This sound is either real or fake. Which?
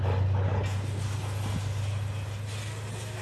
real